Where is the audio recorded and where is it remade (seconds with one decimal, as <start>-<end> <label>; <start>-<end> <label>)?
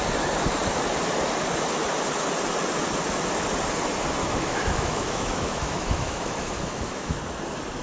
0.0-4.2 recorded; 4.2-7.2 remade; 7.2-7.8 recorded